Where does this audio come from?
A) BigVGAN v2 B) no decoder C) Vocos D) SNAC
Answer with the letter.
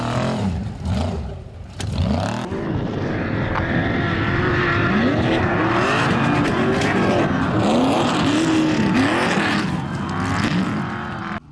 B